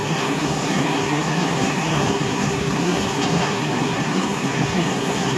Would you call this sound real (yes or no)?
no